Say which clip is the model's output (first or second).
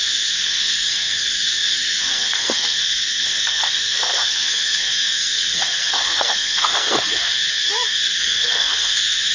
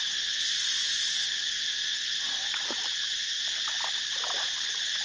first